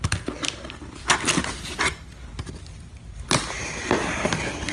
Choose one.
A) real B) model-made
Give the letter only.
A